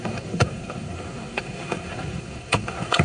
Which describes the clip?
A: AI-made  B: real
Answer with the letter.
A